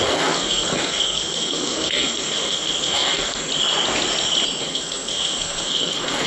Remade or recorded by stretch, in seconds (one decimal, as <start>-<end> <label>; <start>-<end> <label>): 0.0-3.5 remade; 3.5-4.6 recorded; 4.6-6.3 remade